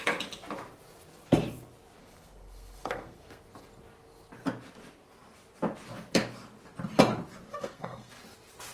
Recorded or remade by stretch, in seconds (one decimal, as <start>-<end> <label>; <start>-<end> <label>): 0.0-2.0 recorded; 2.0-3.4 remade; 3.4-7.5 recorded; 7.5-8.1 remade; 8.1-8.7 recorded